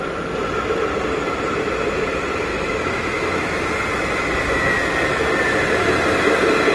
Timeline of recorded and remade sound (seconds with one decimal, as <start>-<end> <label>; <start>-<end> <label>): 0.0-2.5 recorded; 2.5-3.5 remade; 3.5-6.7 recorded